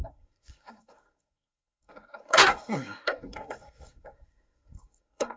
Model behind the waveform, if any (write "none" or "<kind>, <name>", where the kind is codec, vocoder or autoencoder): codec, SNAC